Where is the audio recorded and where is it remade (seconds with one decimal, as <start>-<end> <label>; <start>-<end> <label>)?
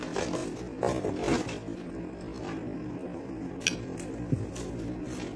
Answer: 0.0-5.4 recorded